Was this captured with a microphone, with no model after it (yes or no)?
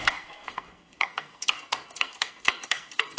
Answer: no